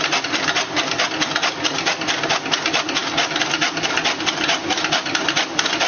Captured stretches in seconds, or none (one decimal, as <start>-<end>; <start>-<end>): 0.0-5.9